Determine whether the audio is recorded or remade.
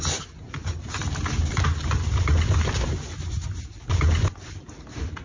recorded